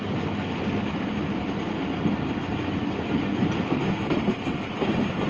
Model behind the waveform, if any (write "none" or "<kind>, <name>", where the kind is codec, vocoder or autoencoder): none